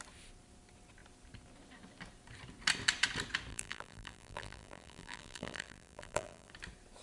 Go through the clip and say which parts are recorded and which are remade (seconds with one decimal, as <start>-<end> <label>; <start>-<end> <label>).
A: 0.0-3.5 recorded; 3.5-6.5 remade; 6.5-7.0 recorded